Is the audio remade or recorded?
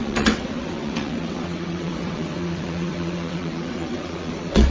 remade